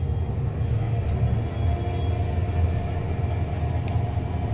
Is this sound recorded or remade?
recorded